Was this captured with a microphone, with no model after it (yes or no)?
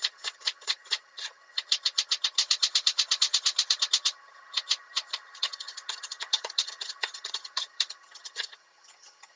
no